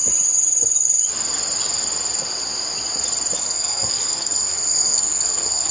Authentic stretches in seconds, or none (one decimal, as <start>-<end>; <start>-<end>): 0.0-3.4